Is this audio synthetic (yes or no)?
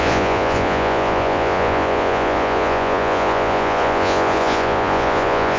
yes